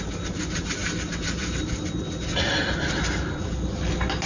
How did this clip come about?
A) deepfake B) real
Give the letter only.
B